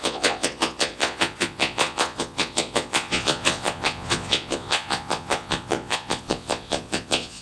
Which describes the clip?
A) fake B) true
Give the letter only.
A